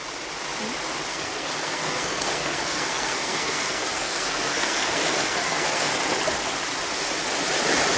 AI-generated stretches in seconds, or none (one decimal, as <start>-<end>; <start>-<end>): 1.1-5.9